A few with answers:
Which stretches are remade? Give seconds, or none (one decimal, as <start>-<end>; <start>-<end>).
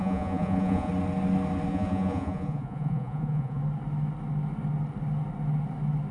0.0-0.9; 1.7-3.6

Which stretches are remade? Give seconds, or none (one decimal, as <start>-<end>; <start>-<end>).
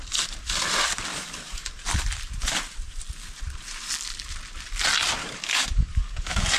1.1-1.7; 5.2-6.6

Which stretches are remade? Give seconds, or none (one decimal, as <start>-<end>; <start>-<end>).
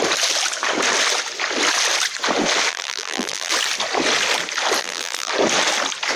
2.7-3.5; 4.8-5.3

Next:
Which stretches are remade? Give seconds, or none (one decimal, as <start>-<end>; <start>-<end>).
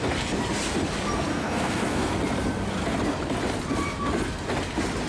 1.3-2.1